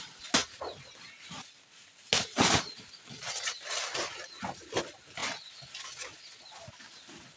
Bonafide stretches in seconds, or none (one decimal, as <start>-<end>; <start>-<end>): 0.0-7.4